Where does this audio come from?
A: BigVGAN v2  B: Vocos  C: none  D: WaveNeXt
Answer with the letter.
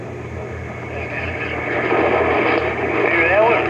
C